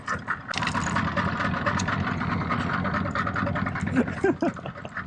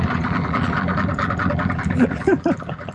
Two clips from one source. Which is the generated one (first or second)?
second